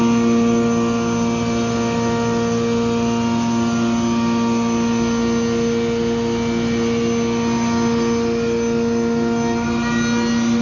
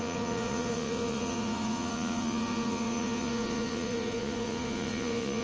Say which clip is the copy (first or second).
second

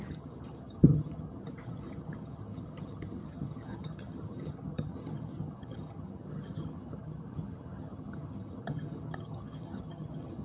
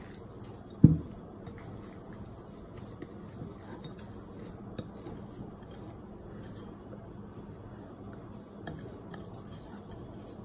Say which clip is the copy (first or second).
first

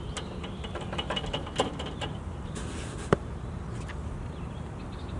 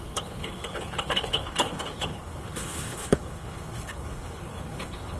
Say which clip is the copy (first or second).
second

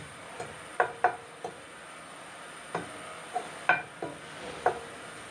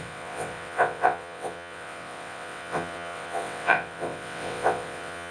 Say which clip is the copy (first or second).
second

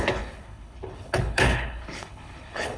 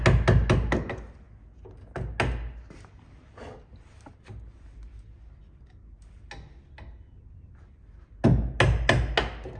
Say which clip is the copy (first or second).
first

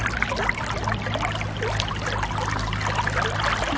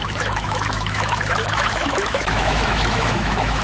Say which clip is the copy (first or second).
second